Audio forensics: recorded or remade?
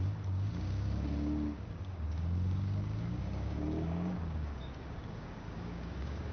remade